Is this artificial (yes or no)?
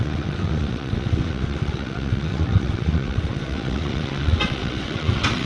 yes